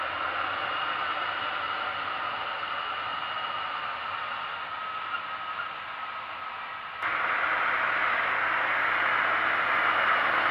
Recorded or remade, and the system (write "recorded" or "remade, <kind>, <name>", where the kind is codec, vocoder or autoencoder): recorded